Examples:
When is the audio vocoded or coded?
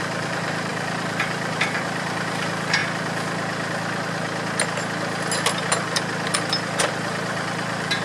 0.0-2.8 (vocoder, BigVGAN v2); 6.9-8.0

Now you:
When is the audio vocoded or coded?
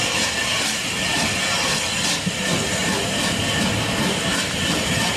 2.8-3.6 (vocoder, BigVGAN v2); 4.3-5.2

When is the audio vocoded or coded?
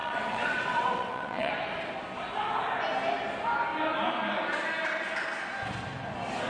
0.0-1.5 (vocoder, WaveNeXt)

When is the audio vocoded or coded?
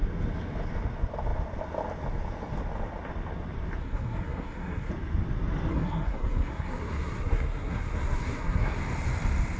3.8-4.9 (codec, SNAC); 5.7-8.8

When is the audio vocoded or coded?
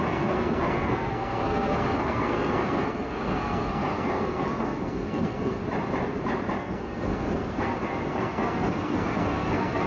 0.0-5.6 (codec, SNAC); 6.6-9.9